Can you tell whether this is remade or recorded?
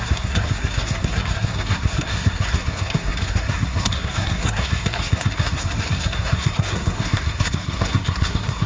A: remade